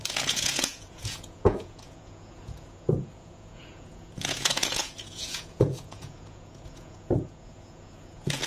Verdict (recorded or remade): remade